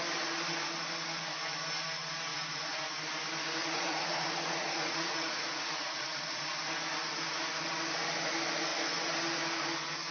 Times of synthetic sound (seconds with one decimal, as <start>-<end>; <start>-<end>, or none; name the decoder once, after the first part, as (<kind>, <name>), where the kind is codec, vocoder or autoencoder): 2.3-3.0 (vocoder, Vocos); 3.6-6.4